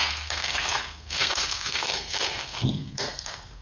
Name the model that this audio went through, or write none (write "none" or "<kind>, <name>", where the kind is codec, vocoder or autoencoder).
codec, SNAC